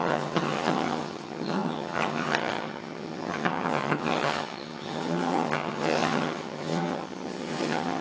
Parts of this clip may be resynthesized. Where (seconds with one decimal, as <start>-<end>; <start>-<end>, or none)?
0.0-8.0